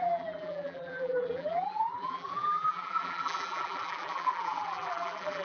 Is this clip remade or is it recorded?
remade